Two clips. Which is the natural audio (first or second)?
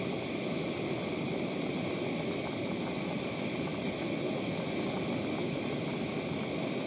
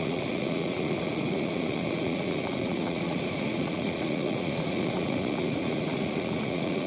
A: first